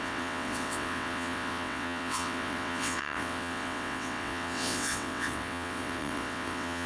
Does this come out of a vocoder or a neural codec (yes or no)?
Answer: yes